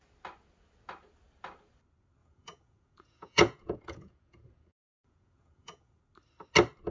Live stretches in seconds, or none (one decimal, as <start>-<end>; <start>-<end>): 0.0-2.2; 6.0-6.9